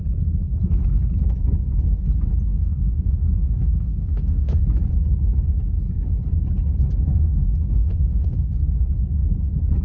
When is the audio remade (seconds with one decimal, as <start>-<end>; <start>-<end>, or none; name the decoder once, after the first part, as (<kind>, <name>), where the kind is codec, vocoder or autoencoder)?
2.5-4.6 (autoencoder, DAC-VAE); 7.1-8.5